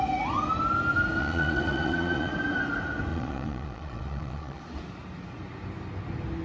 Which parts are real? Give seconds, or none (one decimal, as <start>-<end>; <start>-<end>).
0.0-1.2; 2.3-3.1; 4.6-6.4

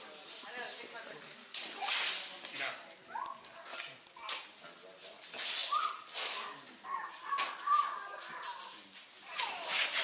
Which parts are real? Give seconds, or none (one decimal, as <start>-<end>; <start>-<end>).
0.0-10.0

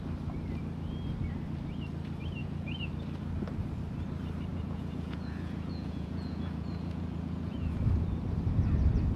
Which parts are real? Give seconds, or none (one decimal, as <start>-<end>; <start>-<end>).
0.0-2.4; 2.9-4.5; 7.8-9.2

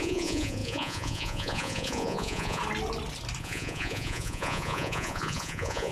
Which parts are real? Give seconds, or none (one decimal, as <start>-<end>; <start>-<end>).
2.6-3.4

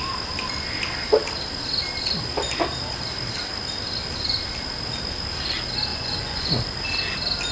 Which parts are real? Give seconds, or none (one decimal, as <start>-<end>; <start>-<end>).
0.0-5.9; 6.5-7.5

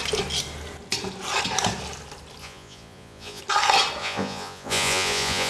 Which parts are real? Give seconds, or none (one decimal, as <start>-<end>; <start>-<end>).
0.0-2.4; 3.4-4.0

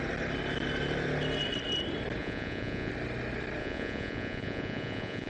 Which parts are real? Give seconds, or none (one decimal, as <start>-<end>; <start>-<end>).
0.0-2.2; 2.9-3.6